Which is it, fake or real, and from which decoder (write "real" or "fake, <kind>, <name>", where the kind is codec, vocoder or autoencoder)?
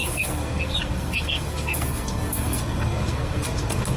fake, codec, SNAC